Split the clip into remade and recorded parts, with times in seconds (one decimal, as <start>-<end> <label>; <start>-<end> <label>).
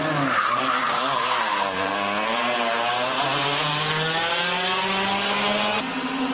0.0-0.8 recorded; 0.8-1.9 remade; 1.9-6.3 recorded